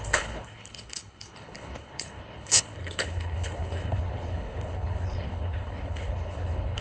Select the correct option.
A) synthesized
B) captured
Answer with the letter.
A